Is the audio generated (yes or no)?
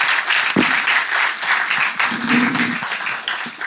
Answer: no